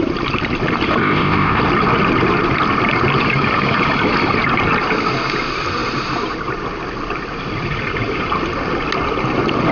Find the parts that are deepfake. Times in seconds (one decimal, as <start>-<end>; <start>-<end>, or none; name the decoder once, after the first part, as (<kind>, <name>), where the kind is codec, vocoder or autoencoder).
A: 1.0-1.6 (codec, ZipCodec)